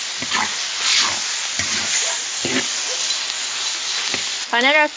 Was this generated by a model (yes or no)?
no